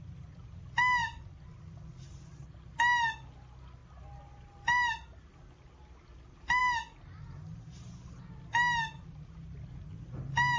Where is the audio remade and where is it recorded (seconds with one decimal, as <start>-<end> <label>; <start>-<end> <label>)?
0.0-1.0 recorded; 1.0-2.5 remade; 2.5-3.8 recorded; 3.8-4.9 remade; 4.9-10.6 recorded